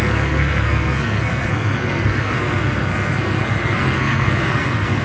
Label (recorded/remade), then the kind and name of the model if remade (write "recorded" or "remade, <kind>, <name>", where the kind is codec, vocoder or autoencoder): remade, codec, SNAC